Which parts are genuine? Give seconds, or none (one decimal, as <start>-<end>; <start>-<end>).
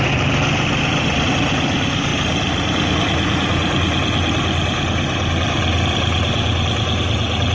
0.0-7.5